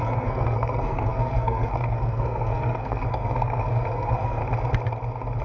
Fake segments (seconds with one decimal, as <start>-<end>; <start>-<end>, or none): 0.0-4.4